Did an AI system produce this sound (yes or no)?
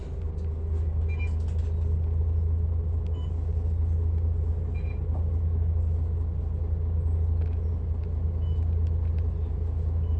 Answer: no